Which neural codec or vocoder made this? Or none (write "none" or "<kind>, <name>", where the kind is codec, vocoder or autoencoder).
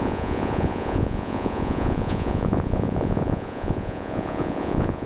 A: vocoder, Vocos